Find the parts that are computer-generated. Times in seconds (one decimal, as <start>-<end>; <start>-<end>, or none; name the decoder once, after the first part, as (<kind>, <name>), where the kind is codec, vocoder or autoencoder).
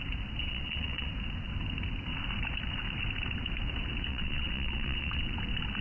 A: 0.4-1.1 (vocoder, WaveNeXt); 4.1-5.3